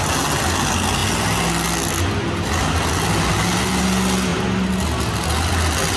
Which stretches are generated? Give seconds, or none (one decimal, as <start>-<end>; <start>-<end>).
none